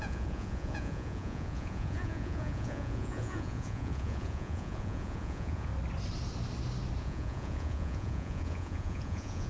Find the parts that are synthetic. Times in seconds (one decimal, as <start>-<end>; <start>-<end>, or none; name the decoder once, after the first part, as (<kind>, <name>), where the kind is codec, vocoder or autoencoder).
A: 0.0-5.7 (vocoder, Vocos); 7.0-9.5